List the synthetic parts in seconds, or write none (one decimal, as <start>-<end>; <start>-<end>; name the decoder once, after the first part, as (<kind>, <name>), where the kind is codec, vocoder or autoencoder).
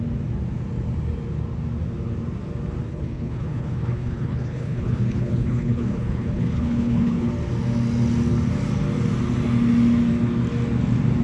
2.9-7.3 (codec, HILCodec)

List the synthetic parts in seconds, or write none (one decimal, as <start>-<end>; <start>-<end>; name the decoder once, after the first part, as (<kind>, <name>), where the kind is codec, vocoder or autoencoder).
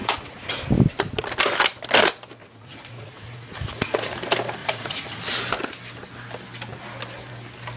0.0-0.6 (vocoder, Vocos); 2.4-4.1; 4.6-5.2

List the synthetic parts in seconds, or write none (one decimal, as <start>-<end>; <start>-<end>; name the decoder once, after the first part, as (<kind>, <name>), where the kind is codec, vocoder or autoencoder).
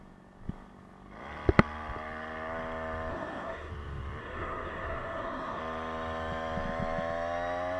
3.1-3.7 (codec, SNAC); 4.2-5.6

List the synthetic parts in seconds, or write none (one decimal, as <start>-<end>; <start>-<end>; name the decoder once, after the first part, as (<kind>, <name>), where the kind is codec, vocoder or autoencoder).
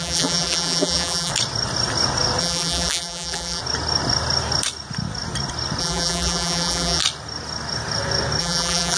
0.0-1.3 (vocoder, BigVGAN v2); 2.4-3.6; 5.8-7.0; 8.4-9.0